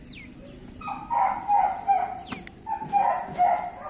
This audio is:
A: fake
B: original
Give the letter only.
B